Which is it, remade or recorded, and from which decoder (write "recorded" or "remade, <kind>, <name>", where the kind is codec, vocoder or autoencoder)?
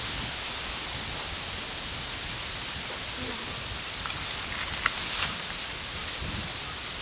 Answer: recorded